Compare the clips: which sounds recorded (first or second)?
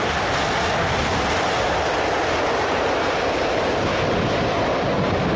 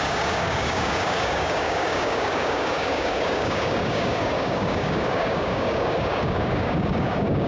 first